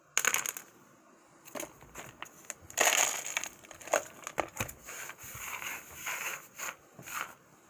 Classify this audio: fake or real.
real